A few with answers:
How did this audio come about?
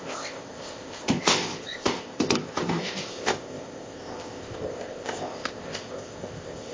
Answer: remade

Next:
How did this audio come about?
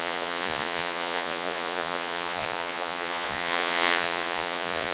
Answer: remade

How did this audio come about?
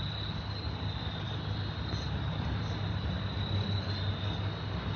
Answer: recorded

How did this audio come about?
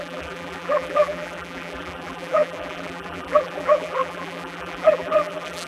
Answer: remade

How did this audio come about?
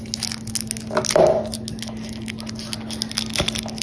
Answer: recorded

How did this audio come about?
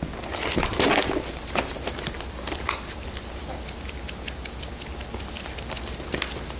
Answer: recorded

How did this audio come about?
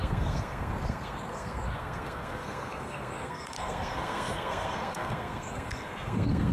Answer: remade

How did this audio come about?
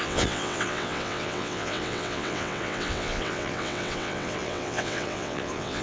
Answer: remade